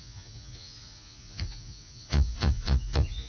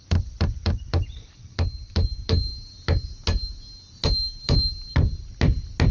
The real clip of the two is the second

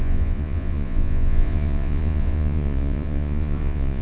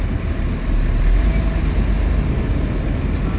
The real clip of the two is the second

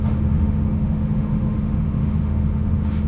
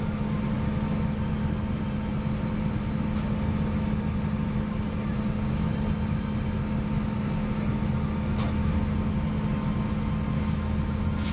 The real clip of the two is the second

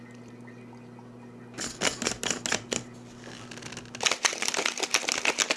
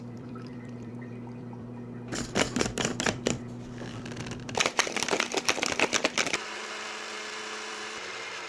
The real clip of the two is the first